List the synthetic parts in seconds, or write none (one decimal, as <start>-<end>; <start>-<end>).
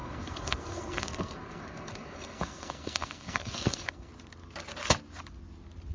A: 0.0-4.1